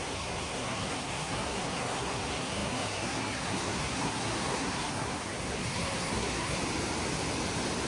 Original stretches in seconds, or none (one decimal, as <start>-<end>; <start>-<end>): 6.6-7.9

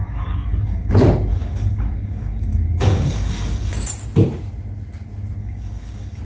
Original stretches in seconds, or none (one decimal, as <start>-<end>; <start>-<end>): 0.9-1.3; 3.9-5.4